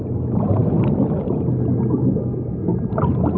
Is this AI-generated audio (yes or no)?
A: no